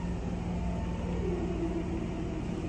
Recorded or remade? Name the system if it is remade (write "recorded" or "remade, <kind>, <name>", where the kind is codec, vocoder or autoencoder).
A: recorded